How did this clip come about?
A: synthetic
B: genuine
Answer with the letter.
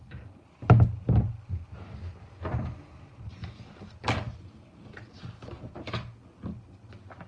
B